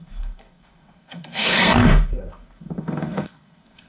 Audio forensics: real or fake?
fake